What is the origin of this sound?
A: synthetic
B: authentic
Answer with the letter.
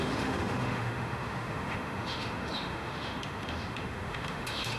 A